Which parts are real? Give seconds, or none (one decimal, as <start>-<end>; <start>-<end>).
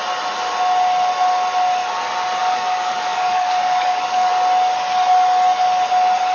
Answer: 0.0-2.4; 4.3-6.3